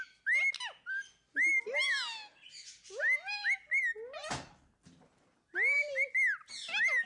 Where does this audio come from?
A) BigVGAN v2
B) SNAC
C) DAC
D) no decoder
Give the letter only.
D